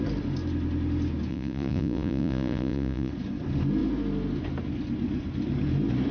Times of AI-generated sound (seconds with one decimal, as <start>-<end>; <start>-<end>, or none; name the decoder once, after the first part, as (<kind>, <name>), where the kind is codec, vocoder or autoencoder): 1.3-3.1 (vocoder, Vocos)